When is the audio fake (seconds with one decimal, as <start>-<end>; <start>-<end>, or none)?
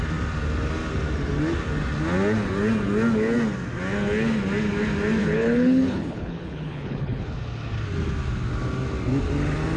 5.2-7.2